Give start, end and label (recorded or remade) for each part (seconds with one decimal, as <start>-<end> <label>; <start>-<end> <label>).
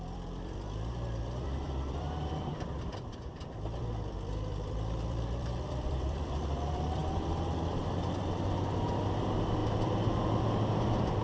0.0-7.0 remade; 7.0-7.6 recorded; 7.6-9.6 remade; 9.6-10.6 recorded; 10.6-11.2 remade